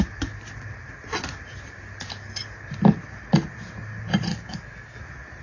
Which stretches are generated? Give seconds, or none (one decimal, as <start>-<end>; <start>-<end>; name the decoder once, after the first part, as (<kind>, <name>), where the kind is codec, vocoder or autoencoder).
4.3-5.0 (codec, DAC)